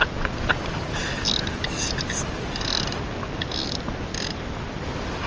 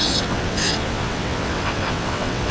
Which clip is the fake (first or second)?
second